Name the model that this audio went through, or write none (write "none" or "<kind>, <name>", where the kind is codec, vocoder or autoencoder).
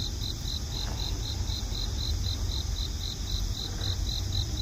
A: none